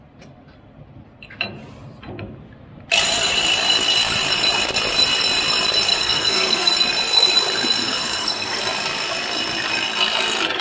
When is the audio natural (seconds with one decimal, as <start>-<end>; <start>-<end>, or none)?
0.0-5.9; 6.7-7.8; 8.6-10.6